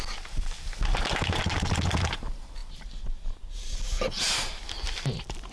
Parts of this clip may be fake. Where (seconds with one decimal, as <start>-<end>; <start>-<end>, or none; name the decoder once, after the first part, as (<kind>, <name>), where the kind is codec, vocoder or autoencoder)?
none

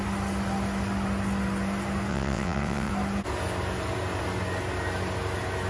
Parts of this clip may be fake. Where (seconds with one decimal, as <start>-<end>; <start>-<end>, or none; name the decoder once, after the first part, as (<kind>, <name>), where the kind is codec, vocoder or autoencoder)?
2.1-2.9 (vocoder, WaveNeXt)